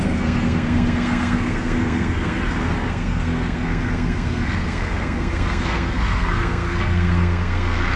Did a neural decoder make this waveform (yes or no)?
yes